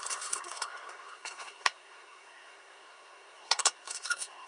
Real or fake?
fake